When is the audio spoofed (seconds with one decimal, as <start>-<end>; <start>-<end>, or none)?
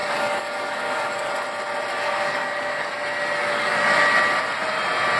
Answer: 0.0-1.3; 1.9-2.9; 3.4-4.0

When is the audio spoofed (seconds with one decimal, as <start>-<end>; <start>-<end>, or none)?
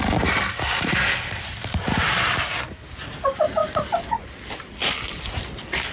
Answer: none